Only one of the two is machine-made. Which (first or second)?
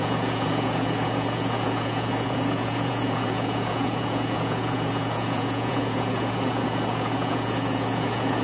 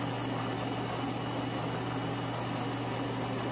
first